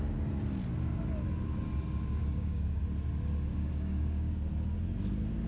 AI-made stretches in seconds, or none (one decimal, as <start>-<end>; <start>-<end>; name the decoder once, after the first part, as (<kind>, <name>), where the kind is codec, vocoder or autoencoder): 2.2-2.8 (codec, DAC); 3.5-4.3